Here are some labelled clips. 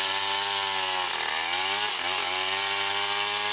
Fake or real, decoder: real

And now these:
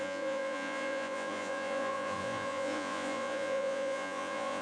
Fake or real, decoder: fake, vocoder, Vocos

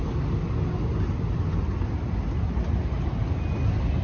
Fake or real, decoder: real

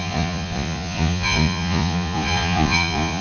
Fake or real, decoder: fake, vocoder, Vocos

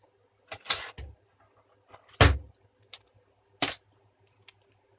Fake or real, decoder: real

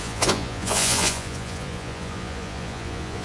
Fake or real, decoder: fake, vocoder, Vocos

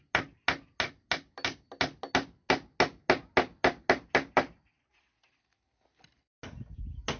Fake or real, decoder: real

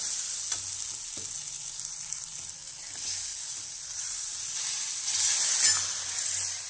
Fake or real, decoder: real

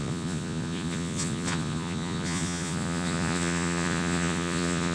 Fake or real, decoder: fake, vocoder, Vocos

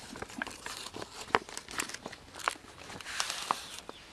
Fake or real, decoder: real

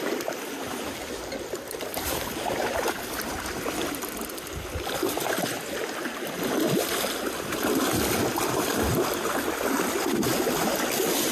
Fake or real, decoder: real